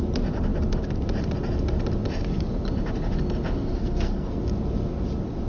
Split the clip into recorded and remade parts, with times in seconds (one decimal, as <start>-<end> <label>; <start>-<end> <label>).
0.0-3.7 recorded; 3.7-4.4 remade; 4.4-5.5 recorded